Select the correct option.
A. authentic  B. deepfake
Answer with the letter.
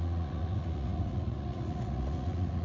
B